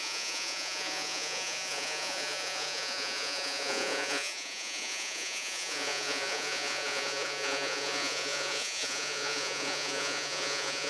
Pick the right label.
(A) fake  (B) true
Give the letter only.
A